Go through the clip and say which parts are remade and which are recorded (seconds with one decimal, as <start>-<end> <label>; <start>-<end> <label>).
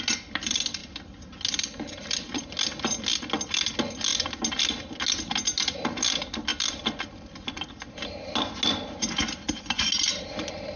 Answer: 0.0-10.8 recorded